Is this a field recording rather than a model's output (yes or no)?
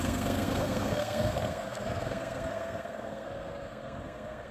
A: no